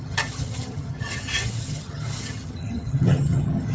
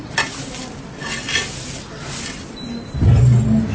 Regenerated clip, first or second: first